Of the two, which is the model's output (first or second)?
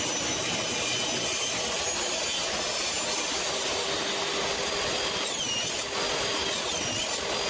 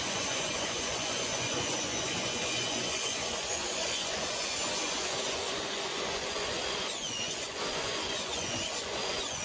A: second